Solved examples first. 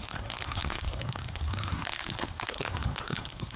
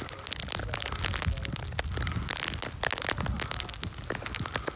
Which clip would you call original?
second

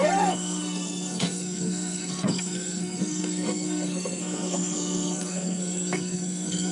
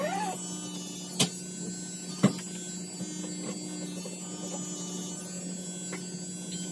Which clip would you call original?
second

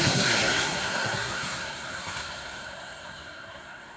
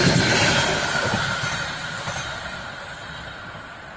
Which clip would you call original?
second